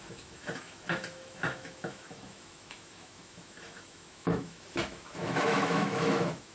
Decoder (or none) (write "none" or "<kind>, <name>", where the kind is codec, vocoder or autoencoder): autoencoder, DAC-VAE